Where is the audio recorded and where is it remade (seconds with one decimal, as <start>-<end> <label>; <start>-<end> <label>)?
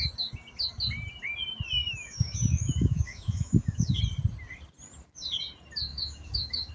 0.0-1.8 recorded; 1.8-4.0 remade; 4.0-5.9 recorded; 5.9-6.7 remade